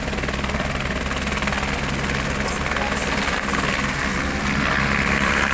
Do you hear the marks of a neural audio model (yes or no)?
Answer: no